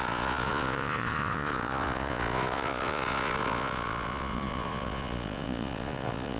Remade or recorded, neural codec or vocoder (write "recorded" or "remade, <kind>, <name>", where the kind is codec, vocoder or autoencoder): remade, vocoder, Vocos